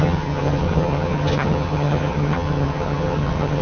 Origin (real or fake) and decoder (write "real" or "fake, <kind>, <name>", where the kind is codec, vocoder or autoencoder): fake, vocoder, HiFi-GAN